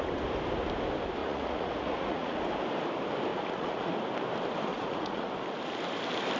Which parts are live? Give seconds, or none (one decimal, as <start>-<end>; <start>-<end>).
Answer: 0.0-1.2; 2.4-3.3; 3.9-4.7; 5.3-6.4